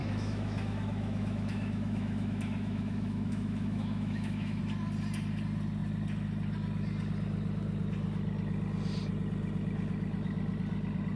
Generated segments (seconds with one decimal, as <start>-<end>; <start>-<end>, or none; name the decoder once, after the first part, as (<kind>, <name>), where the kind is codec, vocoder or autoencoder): 0.0-4.6 (autoencoder, DAC-VAE)